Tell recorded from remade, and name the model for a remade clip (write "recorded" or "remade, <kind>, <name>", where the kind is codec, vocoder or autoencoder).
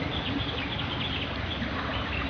recorded